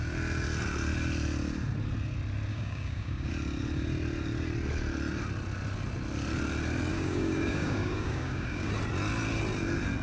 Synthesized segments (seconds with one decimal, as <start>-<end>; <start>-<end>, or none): 2.5-3.3; 6.9-8.7